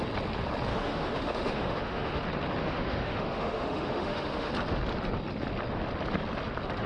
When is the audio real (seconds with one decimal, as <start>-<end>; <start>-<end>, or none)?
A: 0.0-0.7; 2.2-2.6; 4.5-6.9